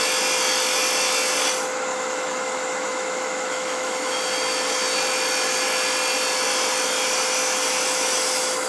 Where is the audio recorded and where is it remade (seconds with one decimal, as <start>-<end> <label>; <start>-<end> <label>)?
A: 0.0-1.9 recorded; 1.9-4.1 remade; 4.1-8.7 recorded